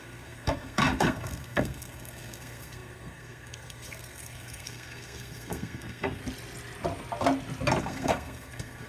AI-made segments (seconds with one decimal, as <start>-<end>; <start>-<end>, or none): 0.0-6.2; 7.8-8.9